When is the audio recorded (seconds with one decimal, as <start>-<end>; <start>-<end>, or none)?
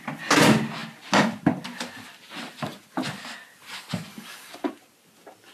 0.0-4.1; 4.7-5.5